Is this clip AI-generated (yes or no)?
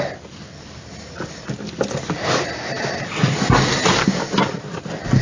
no